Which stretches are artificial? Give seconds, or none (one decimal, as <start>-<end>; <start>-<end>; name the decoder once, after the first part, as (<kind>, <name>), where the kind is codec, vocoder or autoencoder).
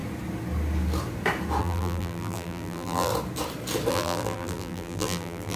1.6-3.1 (vocoder, BigVGAN v2); 3.9-5.6